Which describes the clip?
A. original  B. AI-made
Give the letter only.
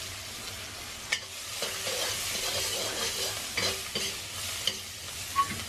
A